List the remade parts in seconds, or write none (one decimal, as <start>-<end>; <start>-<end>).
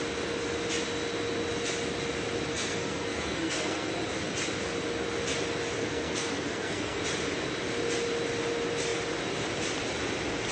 2.5-3.9; 5.8-7.0